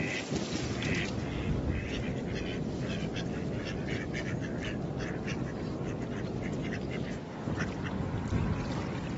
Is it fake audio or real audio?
real